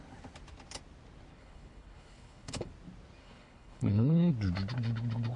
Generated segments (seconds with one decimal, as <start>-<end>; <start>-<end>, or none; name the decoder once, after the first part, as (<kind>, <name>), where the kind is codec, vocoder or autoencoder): 1.3-2.7 (codec, HILCodec); 3.2-4.3